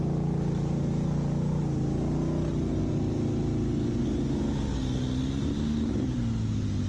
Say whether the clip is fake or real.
real